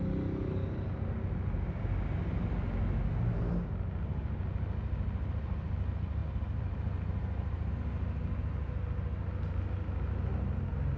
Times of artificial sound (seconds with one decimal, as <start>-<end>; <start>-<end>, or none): none